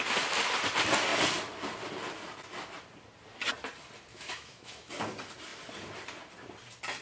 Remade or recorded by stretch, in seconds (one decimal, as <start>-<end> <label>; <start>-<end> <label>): 0.0-4.1 recorded; 4.1-4.9 remade; 4.9-7.0 recorded